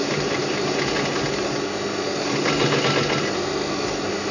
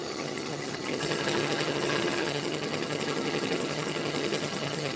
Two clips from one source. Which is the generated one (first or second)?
second